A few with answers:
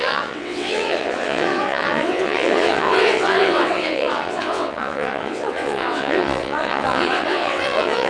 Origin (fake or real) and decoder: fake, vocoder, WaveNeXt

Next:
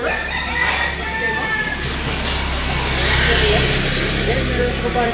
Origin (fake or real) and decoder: real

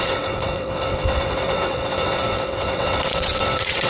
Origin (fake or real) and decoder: fake, vocoder, WaveNeXt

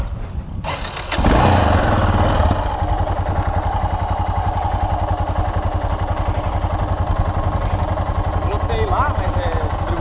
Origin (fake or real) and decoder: real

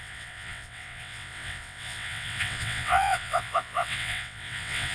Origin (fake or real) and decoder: fake, vocoder, WaveNeXt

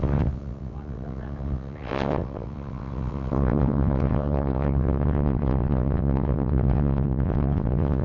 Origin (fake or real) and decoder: fake, vocoder, WaveNeXt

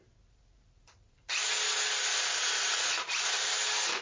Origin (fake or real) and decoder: real